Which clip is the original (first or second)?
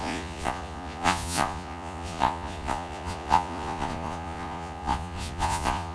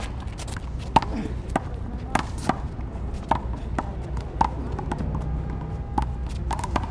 second